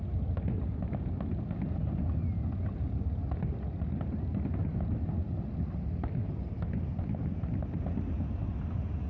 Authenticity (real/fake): real